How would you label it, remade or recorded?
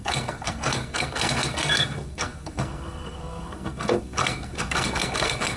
remade